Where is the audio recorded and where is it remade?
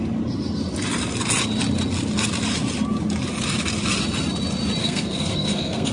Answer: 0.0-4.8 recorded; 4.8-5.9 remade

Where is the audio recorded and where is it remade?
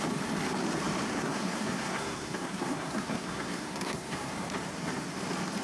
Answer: 0.0-1.1 recorded; 1.1-4.3 remade; 4.3-5.6 recorded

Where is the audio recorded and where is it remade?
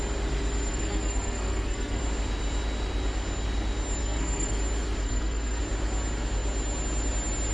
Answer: 0.0-0.7 recorded; 0.7-2.0 remade; 2.0-4.0 recorded; 4.0-4.6 remade; 4.6-5.0 recorded; 5.0-5.6 remade; 5.6-7.5 recorded